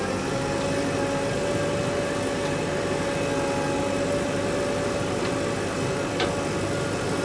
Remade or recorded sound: recorded